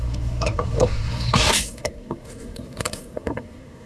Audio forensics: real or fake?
fake